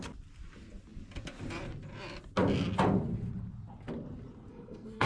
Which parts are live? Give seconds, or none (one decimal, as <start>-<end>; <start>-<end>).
0.0-4.5

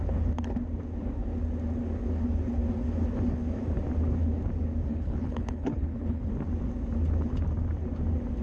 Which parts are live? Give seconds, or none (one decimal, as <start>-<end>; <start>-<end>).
0.0-4.9; 6.3-8.4